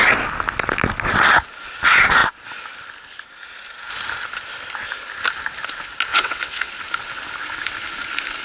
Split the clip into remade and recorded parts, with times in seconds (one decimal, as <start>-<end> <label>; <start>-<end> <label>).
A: 0.0-6.1 recorded; 6.1-6.7 remade; 6.7-8.4 recorded

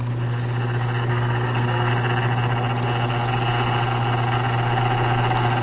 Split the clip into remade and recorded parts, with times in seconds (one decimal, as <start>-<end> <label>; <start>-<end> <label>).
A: 0.0-1.1 recorded; 1.1-1.9 remade; 1.9-5.6 recorded

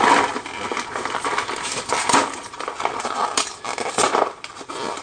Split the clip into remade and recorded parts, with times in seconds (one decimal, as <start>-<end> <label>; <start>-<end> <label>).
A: 0.0-5.0 recorded

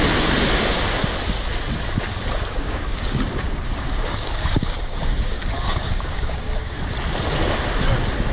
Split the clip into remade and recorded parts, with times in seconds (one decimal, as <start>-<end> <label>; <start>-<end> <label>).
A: 0.0-2.5 recorded; 2.5-6.8 remade; 6.8-8.3 recorded

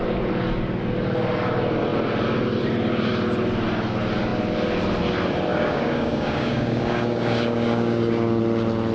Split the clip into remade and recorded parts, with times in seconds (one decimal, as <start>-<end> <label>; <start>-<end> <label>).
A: 0.0-5.5 recorded; 5.5-8.4 remade; 8.4-8.9 recorded

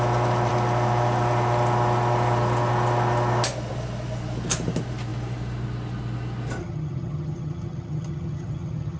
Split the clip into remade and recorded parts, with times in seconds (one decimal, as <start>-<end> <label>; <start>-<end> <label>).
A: 0.0-6.6 recorded; 6.6-9.0 remade